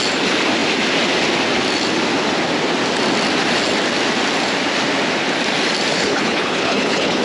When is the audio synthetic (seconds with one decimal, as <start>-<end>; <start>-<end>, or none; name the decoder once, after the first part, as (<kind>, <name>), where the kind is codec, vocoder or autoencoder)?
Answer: 5.9-7.2 (codec, HILCodec)